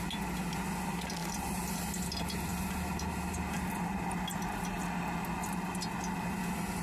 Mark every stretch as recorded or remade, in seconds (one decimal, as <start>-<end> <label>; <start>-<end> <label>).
0.0-1.2 recorded; 1.2-2.1 remade; 2.1-2.5 recorded; 2.5-4.8 remade; 4.8-6.8 recorded